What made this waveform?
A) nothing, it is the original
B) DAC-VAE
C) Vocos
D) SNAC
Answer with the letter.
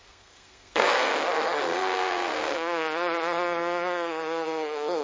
D